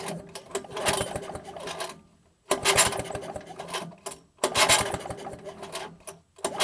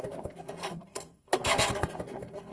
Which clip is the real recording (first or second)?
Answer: first